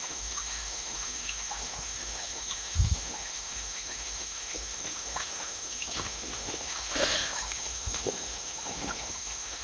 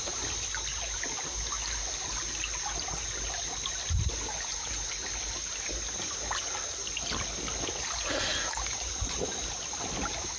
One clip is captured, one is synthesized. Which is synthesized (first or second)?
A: first